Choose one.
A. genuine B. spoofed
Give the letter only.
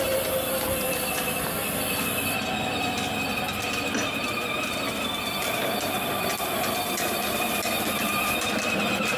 A